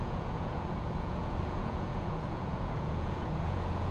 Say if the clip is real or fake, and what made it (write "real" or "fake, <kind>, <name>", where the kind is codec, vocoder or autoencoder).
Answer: fake, vocoder, Vocos